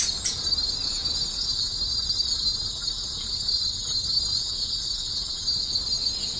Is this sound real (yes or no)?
yes